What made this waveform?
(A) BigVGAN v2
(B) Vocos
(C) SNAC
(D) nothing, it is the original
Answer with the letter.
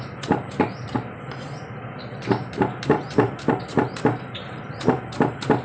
A